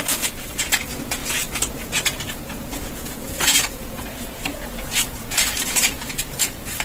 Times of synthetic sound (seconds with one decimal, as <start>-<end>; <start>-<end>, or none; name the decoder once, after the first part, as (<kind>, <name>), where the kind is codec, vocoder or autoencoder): 0.0-6.8 (vocoder, Vocos)